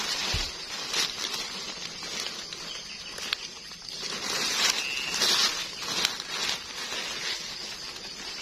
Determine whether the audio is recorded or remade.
recorded